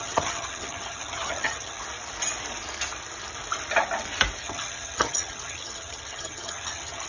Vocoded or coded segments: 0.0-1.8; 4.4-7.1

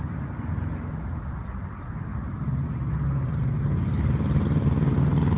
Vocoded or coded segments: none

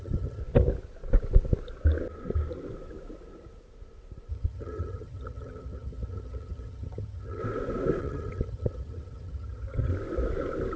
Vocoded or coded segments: 0.0-0.4; 4.3-7.4; 8.0-9.9

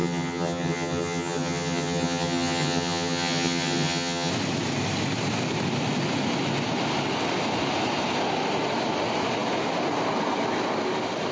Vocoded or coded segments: 0.0-4.3

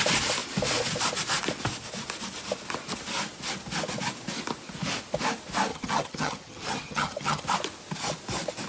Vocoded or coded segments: 5.7-7.4